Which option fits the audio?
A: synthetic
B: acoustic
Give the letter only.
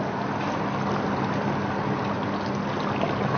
B